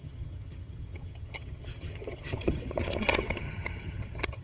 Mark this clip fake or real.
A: fake